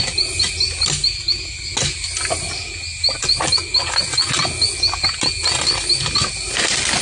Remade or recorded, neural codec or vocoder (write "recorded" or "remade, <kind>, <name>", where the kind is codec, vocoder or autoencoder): recorded